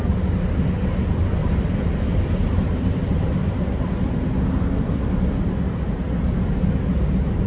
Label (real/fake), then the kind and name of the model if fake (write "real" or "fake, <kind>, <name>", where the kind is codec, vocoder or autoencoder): real